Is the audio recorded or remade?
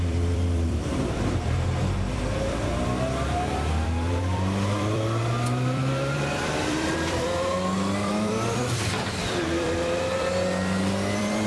remade